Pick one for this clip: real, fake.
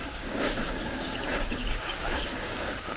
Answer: fake